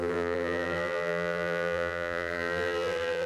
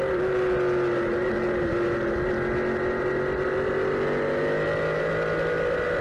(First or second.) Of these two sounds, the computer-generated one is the first